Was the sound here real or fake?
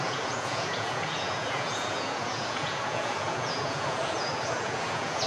fake